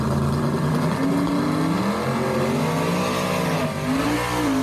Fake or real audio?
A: real